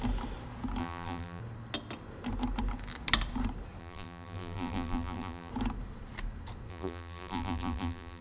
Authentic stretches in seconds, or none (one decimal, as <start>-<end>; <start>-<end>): 0.0-0.8; 1.4-3.8; 5.5-6.7